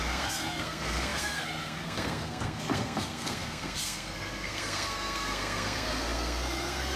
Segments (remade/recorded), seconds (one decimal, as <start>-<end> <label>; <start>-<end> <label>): 0.0-7.0 remade